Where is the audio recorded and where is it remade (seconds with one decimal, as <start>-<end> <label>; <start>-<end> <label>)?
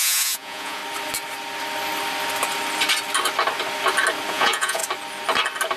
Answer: 0.0-0.8 remade; 0.8-4.3 recorded; 4.3-4.8 remade; 4.8-5.8 recorded